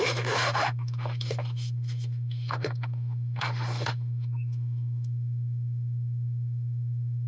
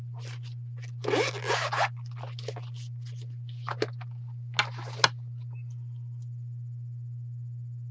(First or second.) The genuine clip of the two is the second